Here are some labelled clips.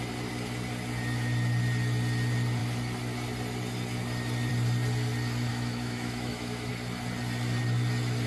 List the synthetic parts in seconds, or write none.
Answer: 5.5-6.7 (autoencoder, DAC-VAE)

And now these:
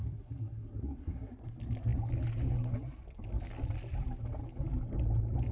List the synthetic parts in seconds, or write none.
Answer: 0.0-1.3 (codec, SNAC)

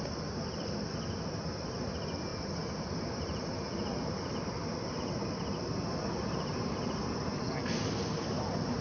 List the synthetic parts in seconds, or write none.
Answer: 2.3-4.3 (vocoder, BigVGAN v2)

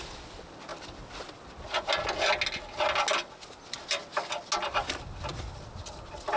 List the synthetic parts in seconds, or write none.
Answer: none

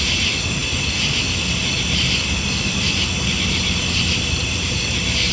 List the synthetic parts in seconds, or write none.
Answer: 0.0-5.3 (vocoder, BigVGAN v2)